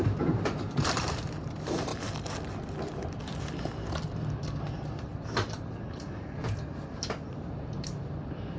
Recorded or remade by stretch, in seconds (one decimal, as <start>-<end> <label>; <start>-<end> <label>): 0.0-1.9 remade; 1.9-4.3 recorded; 4.3-5.1 remade; 5.1-7.3 recorded; 7.3-8.6 remade